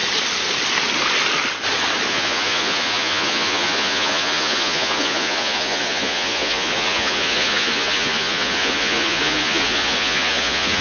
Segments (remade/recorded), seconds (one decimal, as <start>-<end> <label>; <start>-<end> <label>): 0.0-2.1 recorded; 2.1-10.8 remade